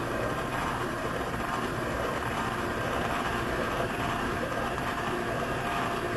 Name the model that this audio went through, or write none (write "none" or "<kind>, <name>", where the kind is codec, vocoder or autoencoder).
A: vocoder, BigVGAN v2